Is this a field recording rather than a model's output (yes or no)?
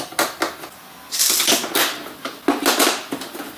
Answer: yes